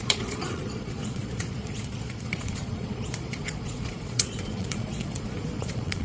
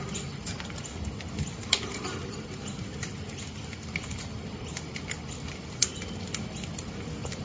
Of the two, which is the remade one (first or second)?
first